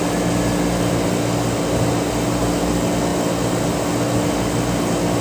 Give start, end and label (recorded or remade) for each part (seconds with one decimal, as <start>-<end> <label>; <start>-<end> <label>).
0.0-5.2 recorded